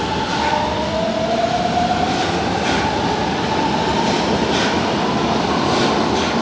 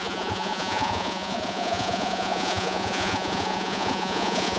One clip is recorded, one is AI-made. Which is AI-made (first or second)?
second